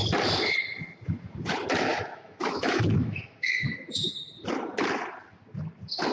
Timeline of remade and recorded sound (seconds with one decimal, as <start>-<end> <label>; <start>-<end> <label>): 0.0-1.9 recorded; 1.9-4.2 remade; 4.2-6.1 recorded